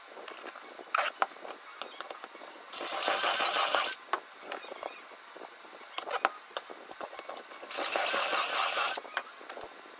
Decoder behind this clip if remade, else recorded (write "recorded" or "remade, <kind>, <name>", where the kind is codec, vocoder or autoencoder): recorded